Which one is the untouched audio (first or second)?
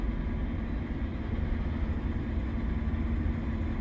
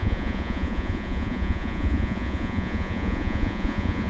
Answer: first